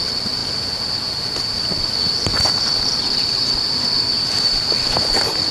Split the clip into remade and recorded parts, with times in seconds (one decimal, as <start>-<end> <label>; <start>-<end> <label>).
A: 0.0-0.4 recorded; 0.4-1.9 remade; 1.9-2.3 recorded; 2.3-4.8 remade; 4.8-5.5 recorded

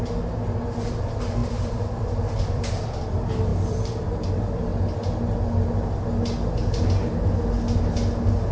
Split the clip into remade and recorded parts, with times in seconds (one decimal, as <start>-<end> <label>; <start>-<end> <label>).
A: 0.0-1.4 recorded; 1.4-3.0 remade; 3.0-3.5 recorded; 3.5-4.3 remade; 4.3-8.5 recorded

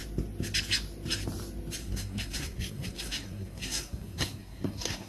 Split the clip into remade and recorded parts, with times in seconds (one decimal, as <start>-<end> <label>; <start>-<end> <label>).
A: 0.0-1.8 recorded; 1.8-5.1 remade

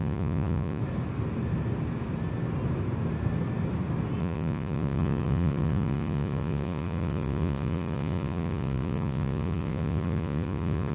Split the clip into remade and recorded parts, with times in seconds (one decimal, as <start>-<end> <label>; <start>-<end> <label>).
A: 0.0-0.8 remade; 0.8-4.2 recorded; 4.2-10.9 remade